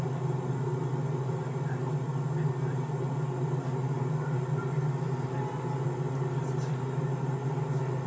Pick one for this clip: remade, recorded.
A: recorded